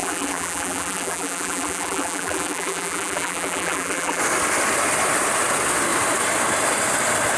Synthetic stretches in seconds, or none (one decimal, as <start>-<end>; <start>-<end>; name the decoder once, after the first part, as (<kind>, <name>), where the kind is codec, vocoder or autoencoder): 0.0-4.2 (vocoder, BigVGAN v2)